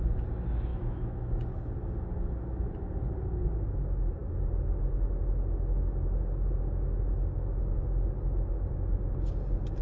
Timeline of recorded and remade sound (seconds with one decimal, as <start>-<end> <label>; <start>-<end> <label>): 0.0-0.7 recorded; 0.7-1.3 remade; 1.3-9.8 recorded